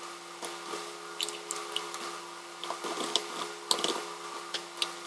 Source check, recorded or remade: recorded